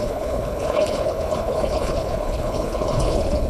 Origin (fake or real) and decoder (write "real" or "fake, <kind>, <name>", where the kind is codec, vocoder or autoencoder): fake, codec, HILCodec